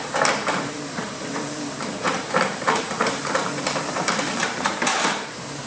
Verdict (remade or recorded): remade